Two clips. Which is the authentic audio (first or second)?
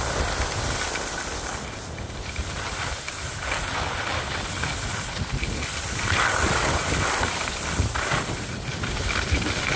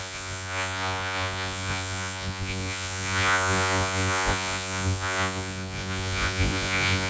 first